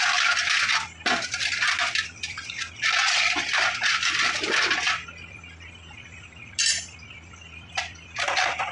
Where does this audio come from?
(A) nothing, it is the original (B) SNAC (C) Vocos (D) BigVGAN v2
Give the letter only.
A